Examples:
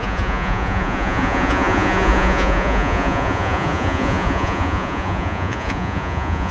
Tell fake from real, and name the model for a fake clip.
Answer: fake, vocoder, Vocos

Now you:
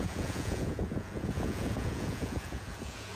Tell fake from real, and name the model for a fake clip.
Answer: fake, vocoder, Vocos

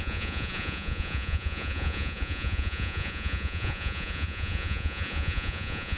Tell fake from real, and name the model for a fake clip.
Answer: fake, vocoder, Vocos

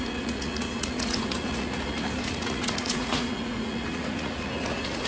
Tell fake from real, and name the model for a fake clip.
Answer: fake, vocoder, Vocos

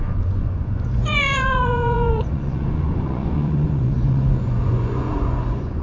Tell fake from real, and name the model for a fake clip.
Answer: fake, vocoder, Vocos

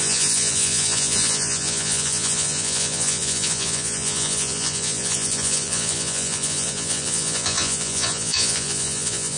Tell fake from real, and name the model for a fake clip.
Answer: fake, vocoder, Vocos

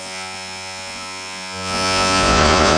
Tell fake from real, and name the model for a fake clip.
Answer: fake, vocoder, Vocos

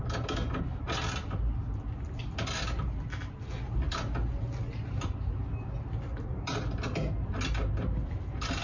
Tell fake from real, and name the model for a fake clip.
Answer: real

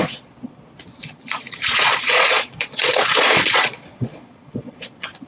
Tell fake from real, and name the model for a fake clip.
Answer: fake, vocoder, Vocos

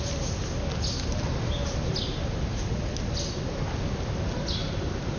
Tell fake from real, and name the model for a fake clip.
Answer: real